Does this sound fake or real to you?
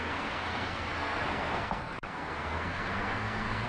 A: fake